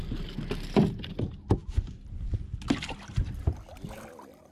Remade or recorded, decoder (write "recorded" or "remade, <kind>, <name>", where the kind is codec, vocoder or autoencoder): recorded